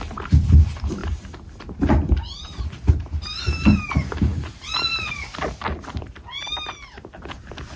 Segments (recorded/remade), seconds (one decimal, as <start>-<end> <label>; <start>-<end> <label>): 0.0-7.8 recorded